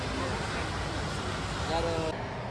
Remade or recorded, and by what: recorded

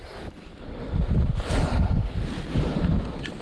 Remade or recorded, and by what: recorded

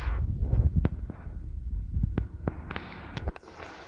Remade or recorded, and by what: recorded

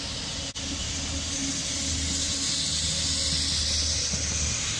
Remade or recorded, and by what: recorded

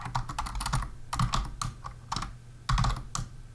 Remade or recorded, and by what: recorded